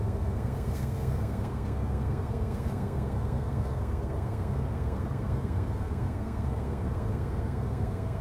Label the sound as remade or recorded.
remade